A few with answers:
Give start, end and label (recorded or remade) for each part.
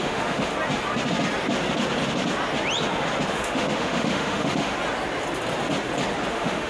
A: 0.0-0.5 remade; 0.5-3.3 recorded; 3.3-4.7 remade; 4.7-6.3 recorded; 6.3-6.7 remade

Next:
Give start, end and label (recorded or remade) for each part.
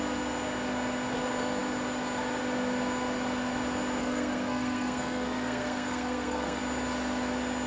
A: 0.0-4.0 recorded; 4.0-6.6 remade; 6.6-7.7 recorded